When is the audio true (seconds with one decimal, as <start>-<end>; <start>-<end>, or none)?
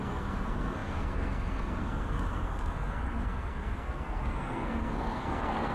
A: none